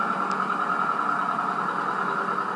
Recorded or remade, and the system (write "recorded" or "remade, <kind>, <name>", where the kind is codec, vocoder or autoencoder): recorded